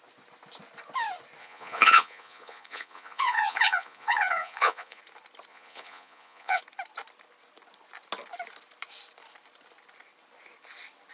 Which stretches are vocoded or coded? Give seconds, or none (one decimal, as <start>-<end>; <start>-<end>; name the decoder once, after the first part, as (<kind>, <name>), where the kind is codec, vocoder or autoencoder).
1.4-5.0 (vocoder, Vocos); 5.5-6.6